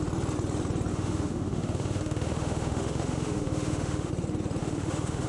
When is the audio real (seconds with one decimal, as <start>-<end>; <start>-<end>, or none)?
0.0-0.9; 4.1-4.6